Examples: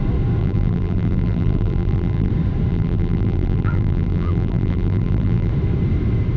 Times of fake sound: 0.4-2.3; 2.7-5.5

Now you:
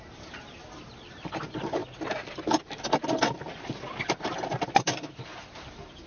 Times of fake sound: 0.0-1.8; 4.2-6.1

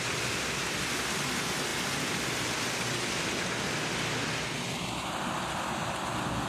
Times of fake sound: none